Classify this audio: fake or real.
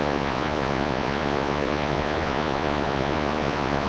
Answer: fake